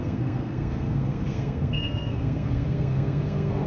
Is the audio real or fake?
fake